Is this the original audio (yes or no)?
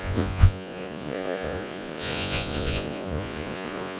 no